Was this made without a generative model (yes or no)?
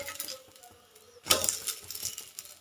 yes